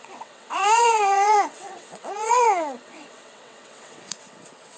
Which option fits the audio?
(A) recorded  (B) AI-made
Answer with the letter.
B